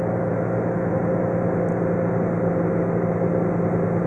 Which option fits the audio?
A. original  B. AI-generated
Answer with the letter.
A